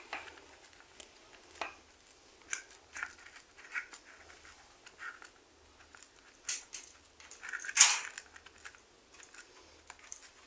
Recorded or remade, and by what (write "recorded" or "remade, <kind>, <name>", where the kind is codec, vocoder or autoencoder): recorded